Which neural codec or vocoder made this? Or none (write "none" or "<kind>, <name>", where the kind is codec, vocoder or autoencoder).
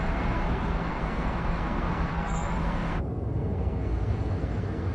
codec, SNAC